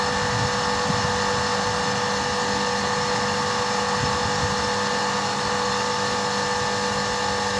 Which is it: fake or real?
real